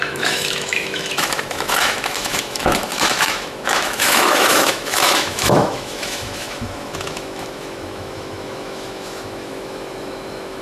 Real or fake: fake